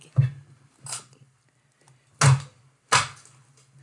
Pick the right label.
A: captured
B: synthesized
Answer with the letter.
A